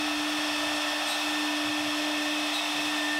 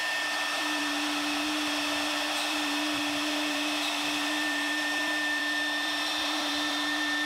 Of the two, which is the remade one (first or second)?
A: second